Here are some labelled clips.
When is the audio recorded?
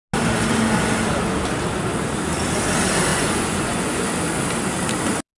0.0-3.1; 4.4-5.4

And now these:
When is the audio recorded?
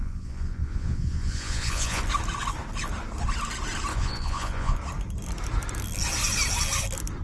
2.0-3.9; 4.8-7.2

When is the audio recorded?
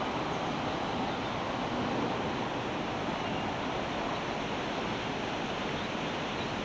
0.0-6.6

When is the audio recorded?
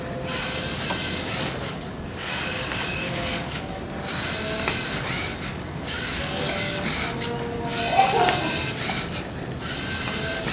0.0-1.0; 3.8-5.3; 7.8-10.5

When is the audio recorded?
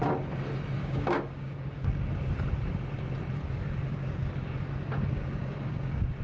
0.0-0.8; 1.9-3.4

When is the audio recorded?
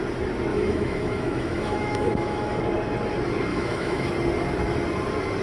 0.0-0.5; 2.6-3.5; 4.1-5.4